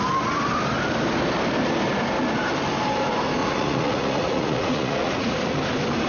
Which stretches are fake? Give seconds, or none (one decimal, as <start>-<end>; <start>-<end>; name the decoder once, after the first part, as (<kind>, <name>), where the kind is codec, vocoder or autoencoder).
3.4-5.5 (vocoder, Vocos)